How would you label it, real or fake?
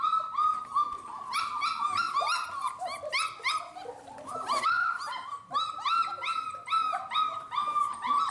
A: real